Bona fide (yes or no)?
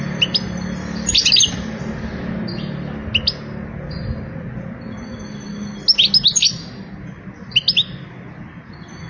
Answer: yes